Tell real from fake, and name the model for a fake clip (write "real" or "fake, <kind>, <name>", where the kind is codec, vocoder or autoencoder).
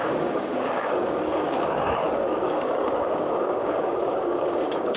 fake, codec, DAC